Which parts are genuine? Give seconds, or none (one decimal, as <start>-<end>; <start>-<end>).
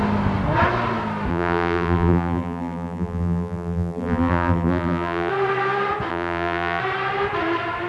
0.0-1.3; 5.3-6.1; 6.8-7.9